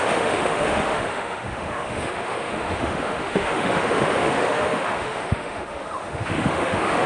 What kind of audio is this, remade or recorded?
remade